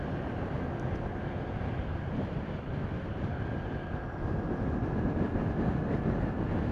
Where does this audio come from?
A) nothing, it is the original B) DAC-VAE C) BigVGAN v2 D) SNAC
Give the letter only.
A